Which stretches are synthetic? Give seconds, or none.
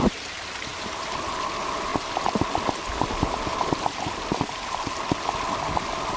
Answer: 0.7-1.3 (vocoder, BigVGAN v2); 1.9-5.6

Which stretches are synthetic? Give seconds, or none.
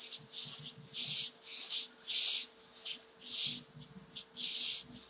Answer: none